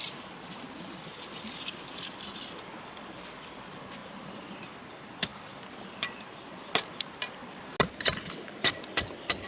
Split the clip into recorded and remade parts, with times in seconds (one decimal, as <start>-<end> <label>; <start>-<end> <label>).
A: 0.0-9.5 recorded